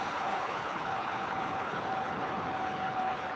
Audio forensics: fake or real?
fake